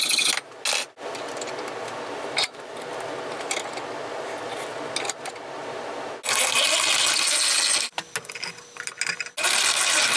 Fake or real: real